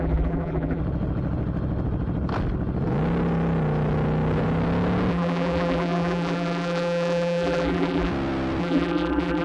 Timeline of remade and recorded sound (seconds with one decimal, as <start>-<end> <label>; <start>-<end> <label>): 0.0-0.8 remade; 0.8-5.1 recorded; 5.1-8.1 remade; 8.1-8.6 recorded; 8.6-9.4 remade